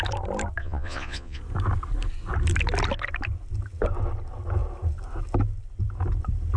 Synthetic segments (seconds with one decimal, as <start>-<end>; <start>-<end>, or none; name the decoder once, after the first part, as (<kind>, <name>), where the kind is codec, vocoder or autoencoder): 0.6-1.4 (vocoder, Vocos)